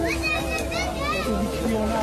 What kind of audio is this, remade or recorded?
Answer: recorded